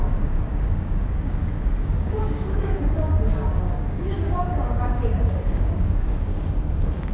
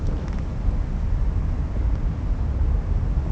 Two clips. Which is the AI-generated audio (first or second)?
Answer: first